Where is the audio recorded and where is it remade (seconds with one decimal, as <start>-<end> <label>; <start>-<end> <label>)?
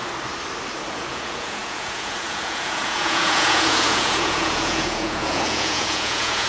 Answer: 0.0-0.9 recorded; 0.9-6.5 remade